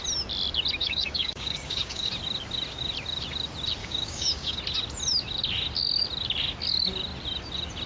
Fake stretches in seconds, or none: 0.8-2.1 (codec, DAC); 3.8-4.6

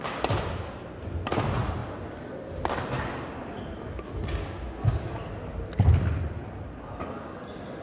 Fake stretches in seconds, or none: none

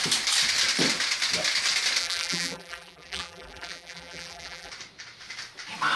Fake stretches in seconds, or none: 2.0-4.7 (vocoder, BigVGAN v2)

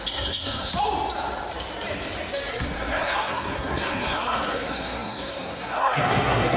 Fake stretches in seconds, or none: 0.0-0.7 (codec, SNAC); 2.5-6.6